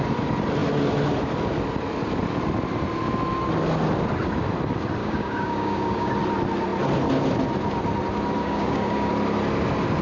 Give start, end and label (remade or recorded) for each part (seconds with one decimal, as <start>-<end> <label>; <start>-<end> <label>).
0.0-5.0 recorded; 5.0-6.1 remade; 6.1-8.4 recorded; 8.4-9.1 remade; 9.1-10.0 recorded